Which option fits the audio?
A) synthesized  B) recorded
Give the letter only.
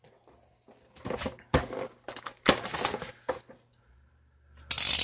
B